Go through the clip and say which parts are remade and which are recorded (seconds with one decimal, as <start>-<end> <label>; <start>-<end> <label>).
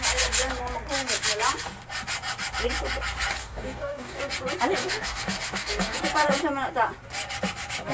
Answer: 0.0-3.4 recorded; 3.4-4.2 remade; 4.2-4.8 recorded; 4.8-6.0 remade; 6.0-7.9 recorded